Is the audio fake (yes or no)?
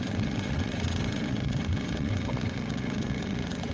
yes